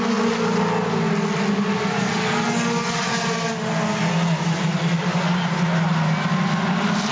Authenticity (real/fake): real